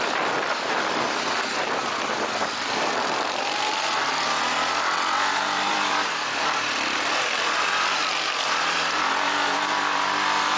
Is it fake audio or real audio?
fake